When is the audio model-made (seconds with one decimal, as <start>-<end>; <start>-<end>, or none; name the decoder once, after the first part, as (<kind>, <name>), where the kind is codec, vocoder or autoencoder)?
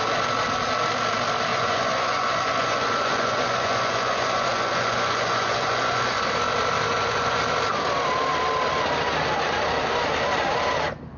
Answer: 1.5-6.2 (vocoder, Vocos); 6.9-7.4